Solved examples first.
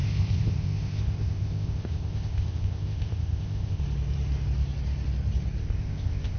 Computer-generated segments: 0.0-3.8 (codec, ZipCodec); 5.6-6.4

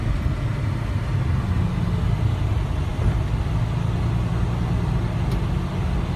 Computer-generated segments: none

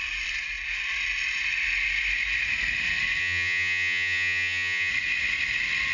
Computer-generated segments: 3.2-4.9 (vocoder, HiFi-GAN)

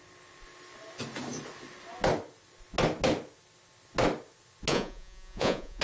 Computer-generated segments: 4.7-5.8 (vocoder, Vocos)